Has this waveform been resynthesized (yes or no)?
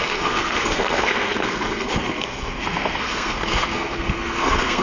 yes